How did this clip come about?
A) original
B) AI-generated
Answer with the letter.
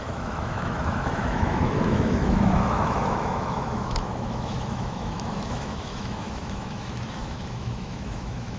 B